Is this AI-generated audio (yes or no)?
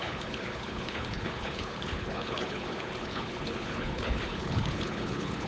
yes